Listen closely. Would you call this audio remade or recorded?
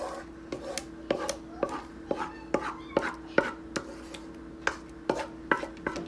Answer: recorded